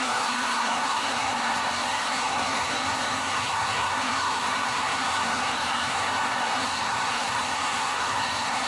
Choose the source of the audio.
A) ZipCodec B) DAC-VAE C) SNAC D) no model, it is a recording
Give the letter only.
C